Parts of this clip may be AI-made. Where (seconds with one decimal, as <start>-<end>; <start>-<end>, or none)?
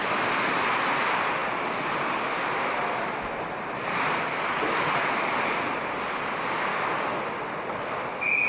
none